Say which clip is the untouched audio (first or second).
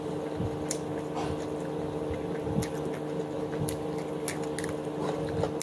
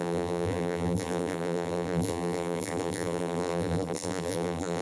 first